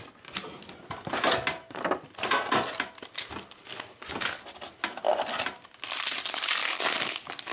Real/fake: real